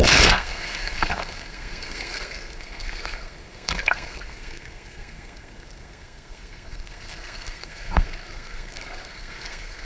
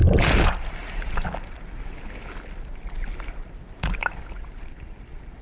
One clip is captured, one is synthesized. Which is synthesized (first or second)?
first